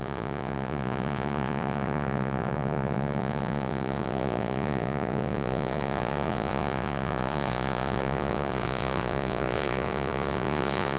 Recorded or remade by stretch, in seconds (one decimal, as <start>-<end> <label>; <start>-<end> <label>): 0.0-11.0 remade